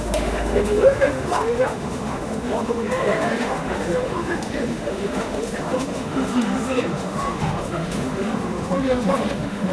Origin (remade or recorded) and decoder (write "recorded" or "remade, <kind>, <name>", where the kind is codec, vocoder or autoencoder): remade, autoencoder, DAC-VAE